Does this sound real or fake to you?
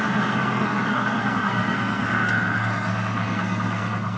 fake